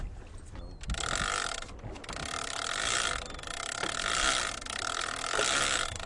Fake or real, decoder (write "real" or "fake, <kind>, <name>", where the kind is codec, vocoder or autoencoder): real